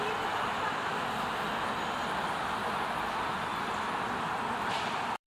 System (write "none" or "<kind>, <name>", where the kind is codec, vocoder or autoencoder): vocoder, BigVGAN v2